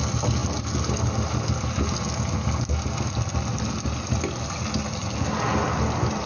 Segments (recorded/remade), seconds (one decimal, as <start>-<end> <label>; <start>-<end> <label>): 0.0-6.3 recorded